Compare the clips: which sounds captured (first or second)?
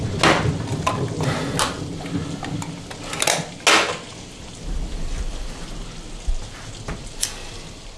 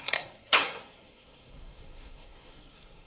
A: first